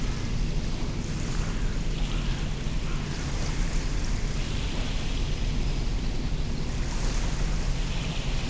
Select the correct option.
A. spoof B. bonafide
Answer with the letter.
B